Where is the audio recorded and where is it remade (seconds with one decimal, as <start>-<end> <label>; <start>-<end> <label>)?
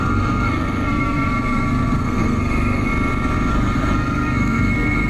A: 0.0-2.9 remade; 2.9-3.5 recorded; 3.5-5.1 remade